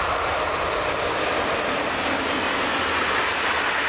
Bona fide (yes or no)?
yes